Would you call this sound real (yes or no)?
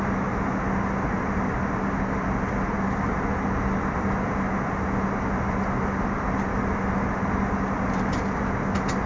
yes